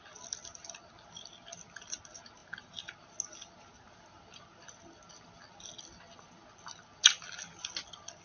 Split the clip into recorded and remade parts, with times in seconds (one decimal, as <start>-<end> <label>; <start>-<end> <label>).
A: 0.0-8.2 recorded